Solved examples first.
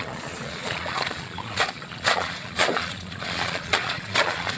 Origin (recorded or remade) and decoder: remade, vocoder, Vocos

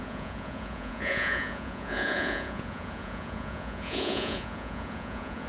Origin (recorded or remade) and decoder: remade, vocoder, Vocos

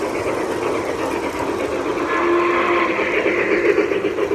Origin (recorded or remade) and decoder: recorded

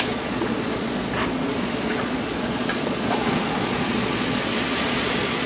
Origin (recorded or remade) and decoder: remade, vocoder, Vocos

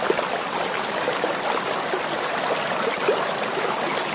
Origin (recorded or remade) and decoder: recorded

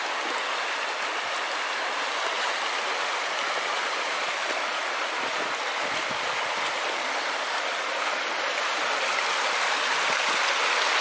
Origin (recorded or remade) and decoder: recorded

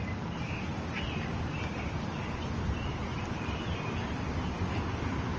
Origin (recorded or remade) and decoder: recorded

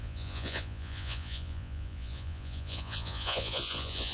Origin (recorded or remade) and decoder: remade, vocoder, Vocos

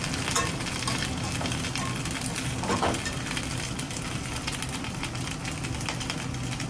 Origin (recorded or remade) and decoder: recorded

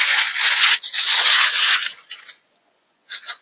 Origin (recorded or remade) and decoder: remade, vocoder, Vocos